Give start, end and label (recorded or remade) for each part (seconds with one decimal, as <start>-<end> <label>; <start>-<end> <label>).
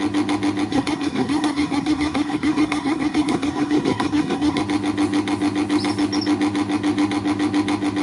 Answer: 0.0-0.7 recorded; 0.7-4.6 remade; 4.6-8.0 recorded